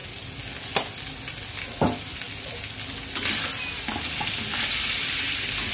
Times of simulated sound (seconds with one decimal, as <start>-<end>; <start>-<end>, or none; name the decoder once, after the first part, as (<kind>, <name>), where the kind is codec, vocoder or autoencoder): 2.1-5.7 (vocoder, BigVGAN v2)